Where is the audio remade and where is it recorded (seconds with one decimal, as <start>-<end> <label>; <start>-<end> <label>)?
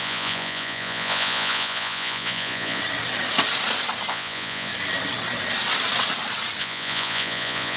0.0-2.8 remade; 2.8-4.1 recorded; 4.1-4.7 remade; 4.7-6.6 recorded; 6.6-7.8 remade